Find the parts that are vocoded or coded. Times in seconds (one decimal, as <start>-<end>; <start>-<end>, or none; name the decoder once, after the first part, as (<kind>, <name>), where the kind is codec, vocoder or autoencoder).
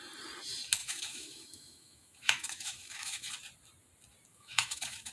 0.8-3.3 (autoencoder, DAC-VAE); 4.3-5.1